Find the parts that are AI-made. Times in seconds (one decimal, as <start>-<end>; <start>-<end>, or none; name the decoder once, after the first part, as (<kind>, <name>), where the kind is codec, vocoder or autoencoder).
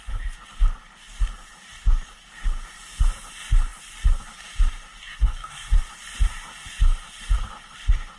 5.0-5.8 (codec, SNAC)